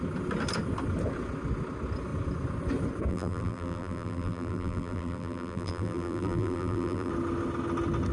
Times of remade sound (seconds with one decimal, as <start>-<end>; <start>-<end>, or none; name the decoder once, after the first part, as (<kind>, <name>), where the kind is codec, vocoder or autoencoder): 3.1-7.1 (vocoder, BigVGAN v2)